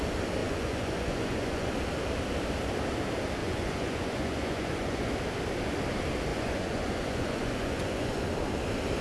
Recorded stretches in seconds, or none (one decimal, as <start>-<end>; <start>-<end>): 0.0-0.4; 1.7-3.4; 5.1-6.3; 8.2-9.0